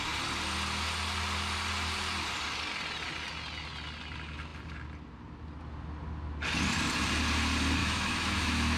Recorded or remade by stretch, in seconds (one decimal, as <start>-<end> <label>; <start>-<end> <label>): 0.0-7.8 recorded; 7.8-8.8 remade